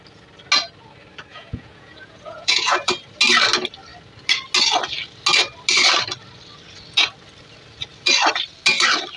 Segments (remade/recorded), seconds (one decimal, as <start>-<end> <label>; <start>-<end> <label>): 0.0-1.3 recorded; 1.3-2.9 remade; 2.9-9.2 recorded